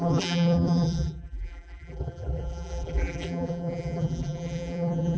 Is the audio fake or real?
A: fake